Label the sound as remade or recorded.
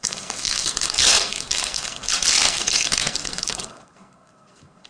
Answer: remade